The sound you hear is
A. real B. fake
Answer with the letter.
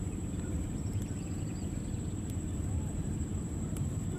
B